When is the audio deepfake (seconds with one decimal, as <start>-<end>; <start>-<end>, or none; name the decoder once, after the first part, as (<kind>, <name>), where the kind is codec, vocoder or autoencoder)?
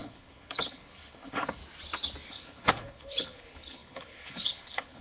0.0-1.6 (codec, HILCodec); 2.3-5.0